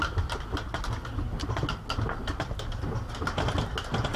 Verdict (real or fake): real